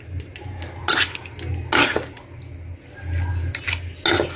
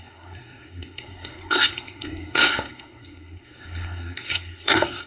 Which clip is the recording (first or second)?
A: first